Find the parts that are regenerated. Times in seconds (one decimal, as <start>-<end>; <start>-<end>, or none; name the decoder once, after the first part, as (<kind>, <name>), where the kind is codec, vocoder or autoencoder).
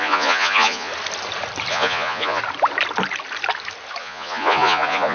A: 0.0-0.9 (vocoder, Vocos); 1.7-2.4; 4.0-5.1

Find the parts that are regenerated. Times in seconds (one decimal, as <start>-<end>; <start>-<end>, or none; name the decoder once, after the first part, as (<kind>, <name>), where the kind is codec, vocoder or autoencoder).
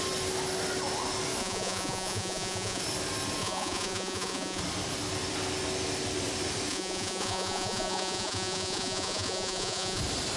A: 1.4-2.8 (vocoder, Vocos); 3.4-4.6; 6.7-10.0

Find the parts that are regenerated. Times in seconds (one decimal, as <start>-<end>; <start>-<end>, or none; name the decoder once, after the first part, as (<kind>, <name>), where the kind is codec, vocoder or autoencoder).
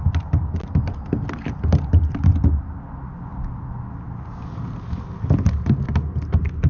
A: none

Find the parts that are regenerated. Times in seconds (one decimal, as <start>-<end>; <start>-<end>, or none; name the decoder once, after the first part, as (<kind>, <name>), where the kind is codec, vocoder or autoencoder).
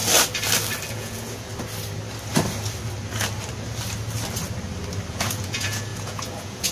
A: 0.9-1.5 (vocoder, Vocos); 5.1-6.7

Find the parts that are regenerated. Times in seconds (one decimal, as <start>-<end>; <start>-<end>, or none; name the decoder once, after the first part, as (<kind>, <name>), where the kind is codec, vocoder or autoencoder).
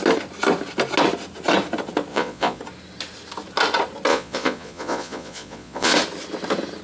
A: 2.1-2.6 (vocoder, Vocos); 4.1-5.9